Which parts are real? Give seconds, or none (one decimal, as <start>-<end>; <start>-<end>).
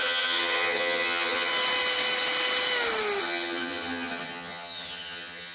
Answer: 1.5-3.2